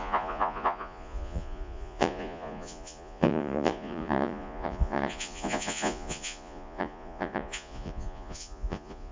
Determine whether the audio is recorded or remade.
remade